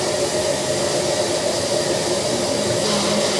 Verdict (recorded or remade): recorded